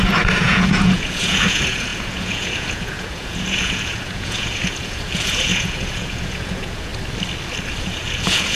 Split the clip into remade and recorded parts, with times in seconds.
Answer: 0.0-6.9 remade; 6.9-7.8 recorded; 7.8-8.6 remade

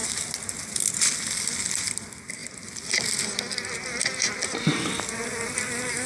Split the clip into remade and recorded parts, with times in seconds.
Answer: 0.0-6.1 recorded

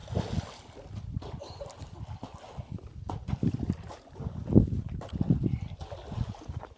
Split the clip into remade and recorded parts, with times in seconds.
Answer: 0.0-6.8 recorded

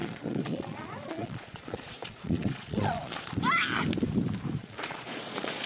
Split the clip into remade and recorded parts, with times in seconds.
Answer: 0.0-3.4 remade; 3.4-4.6 recorded; 4.6-5.7 remade